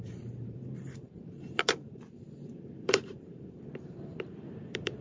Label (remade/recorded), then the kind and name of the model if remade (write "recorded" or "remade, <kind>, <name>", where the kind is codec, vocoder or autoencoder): remade, vocoder, BigVGAN v2